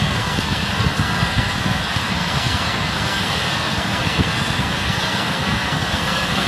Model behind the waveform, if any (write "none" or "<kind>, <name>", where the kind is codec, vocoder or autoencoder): codec, SNAC